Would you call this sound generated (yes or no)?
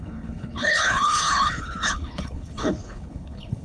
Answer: yes